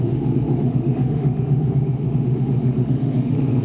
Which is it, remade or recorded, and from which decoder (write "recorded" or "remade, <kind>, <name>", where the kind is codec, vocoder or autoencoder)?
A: remade, autoencoder, DAC-VAE